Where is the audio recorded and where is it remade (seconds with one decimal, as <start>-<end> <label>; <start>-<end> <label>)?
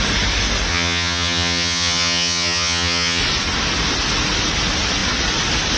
0.0-0.7 recorded; 0.7-3.2 remade; 3.2-5.8 recorded